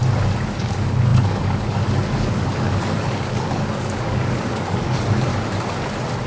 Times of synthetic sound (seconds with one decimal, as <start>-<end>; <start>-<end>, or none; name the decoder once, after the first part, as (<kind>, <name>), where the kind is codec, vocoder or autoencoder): 0.5-5.3 (codec, DAC)